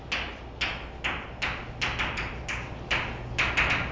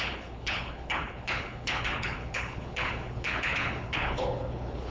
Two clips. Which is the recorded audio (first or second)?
first